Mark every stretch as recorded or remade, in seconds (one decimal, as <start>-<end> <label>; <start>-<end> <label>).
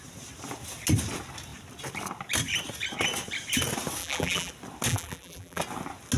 0.0-4.0 recorded; 4.0-4.5 remade; 4.5-4.9 recorded; 4.9-5.6 remade; 5.6-6.2 recorded